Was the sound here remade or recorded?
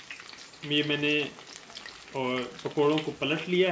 recorded